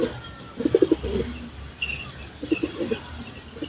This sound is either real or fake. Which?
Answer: real